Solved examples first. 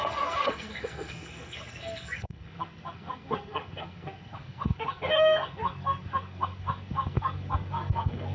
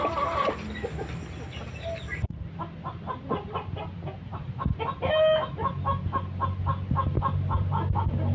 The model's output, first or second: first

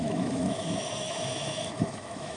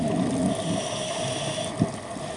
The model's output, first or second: first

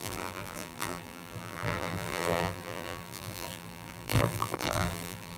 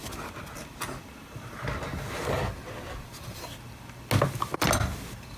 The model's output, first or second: first